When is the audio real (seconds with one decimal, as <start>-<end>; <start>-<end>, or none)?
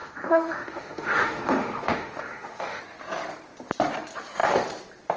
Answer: 2.8-5.2